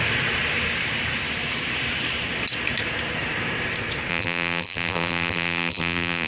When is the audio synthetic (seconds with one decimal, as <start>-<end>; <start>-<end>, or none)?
4.1-6.3